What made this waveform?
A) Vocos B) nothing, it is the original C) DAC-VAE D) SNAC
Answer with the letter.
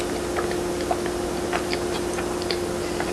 B